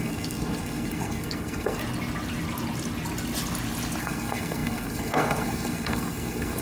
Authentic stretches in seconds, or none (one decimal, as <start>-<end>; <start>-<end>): 1.8-4.0